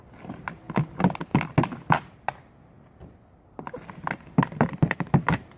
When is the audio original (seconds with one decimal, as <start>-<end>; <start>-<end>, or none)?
0.0-5.6